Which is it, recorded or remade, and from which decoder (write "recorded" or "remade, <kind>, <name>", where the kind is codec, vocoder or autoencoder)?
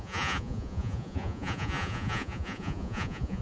remade, vocoder, Vocos